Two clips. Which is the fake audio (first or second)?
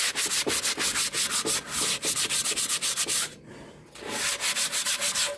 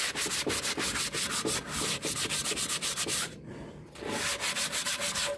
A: second